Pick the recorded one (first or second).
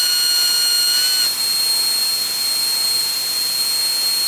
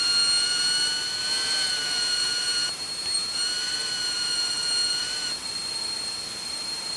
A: first